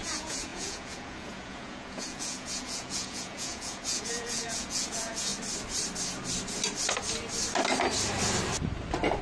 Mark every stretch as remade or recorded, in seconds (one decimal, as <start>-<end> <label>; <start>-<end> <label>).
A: 0.0-5.3 remade; 5.3-9.2 recorded

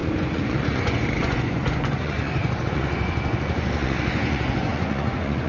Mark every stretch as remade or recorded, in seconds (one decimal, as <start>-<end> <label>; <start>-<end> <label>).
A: 0.0-5.5 remade

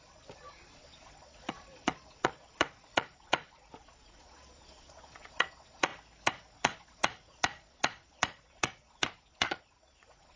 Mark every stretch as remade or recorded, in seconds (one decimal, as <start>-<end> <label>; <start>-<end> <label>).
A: 0.0-5.9 remade; 5.9-6.5 recorded; 6.5-10.4 remade

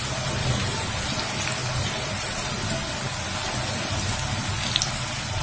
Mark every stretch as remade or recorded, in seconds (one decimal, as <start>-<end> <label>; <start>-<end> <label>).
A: 0.0-5.4 recorded

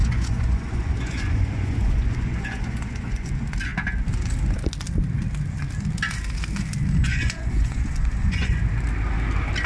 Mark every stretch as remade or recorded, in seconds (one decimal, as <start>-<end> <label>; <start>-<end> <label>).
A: 0.0-3.3 remade; 3.3-7.0 recorded; 7.0-8.6 remade; 8.6-9.7 recorded

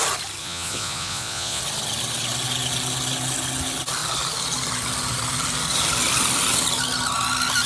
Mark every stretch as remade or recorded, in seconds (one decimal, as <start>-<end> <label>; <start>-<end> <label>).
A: 0.0-0.4 recorded; 0.4-1.6 remade; 1.6-7.7 recorded